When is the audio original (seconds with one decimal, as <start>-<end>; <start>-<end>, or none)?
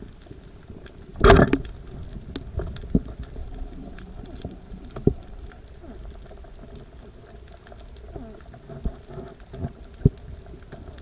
0.0-3.4; 5.6-11.0